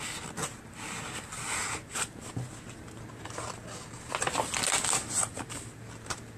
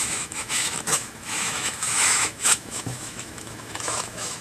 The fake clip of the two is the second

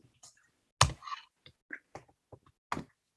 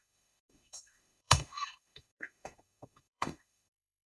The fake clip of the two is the second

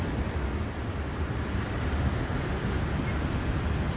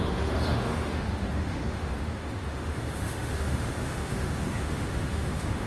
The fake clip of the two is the second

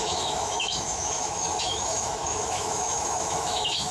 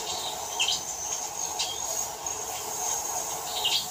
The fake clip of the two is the first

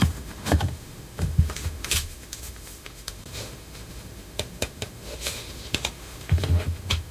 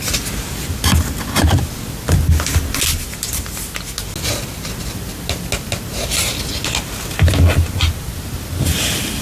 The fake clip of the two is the first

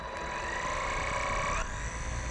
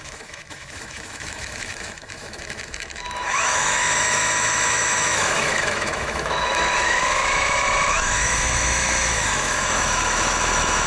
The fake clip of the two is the second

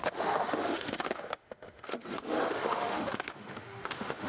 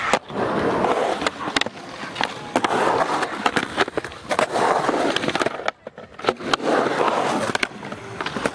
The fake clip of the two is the first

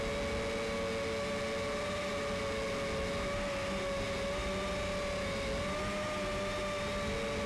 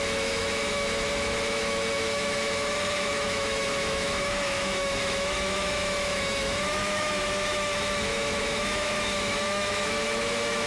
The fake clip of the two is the second